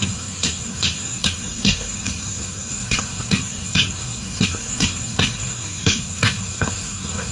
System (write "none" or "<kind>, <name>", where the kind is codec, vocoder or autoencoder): codec, SNAC